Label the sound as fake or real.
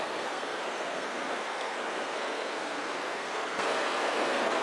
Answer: fake